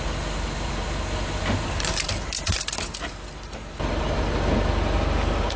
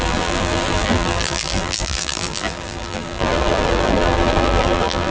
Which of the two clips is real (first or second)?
first